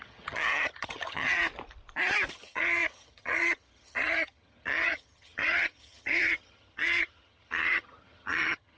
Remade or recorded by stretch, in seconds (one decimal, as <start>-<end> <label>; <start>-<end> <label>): 0.0-1.4 remade; 1.4-2.3 recorded; 2.3-8.8 remade